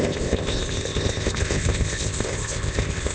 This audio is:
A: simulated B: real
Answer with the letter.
A